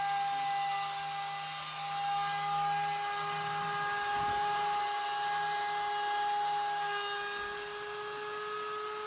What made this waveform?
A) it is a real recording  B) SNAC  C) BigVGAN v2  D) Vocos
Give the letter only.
A